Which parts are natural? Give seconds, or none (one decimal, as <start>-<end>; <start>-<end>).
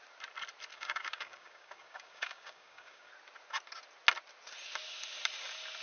0.0-0.7; 3.1-5.8